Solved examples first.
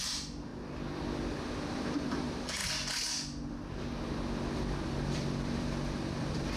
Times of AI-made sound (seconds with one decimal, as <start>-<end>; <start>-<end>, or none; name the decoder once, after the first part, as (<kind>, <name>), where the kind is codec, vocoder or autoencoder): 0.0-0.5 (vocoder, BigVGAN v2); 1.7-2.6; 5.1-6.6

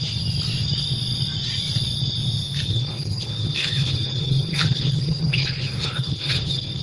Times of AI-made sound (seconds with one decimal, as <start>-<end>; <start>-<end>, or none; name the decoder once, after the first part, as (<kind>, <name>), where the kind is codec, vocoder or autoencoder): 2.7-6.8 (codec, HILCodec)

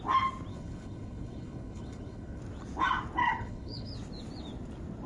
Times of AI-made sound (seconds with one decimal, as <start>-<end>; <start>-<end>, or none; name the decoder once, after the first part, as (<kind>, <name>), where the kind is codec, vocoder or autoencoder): 0.5-2.4 (codec, HILCodec); 3.2-3.9

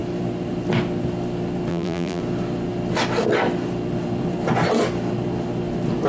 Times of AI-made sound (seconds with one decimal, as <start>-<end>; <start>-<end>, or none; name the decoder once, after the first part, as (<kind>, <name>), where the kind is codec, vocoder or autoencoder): 1.7-2.2 (vocoder, BigVGAN v2)